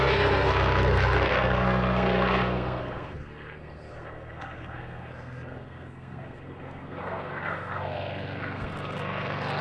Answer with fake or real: fake